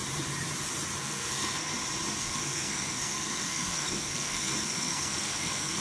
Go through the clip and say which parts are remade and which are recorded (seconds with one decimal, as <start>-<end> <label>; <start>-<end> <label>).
0.0-1.0 recorded; 1.0-1.7 remade; 1.7-2.2 recorded; 2.2-5.8 remade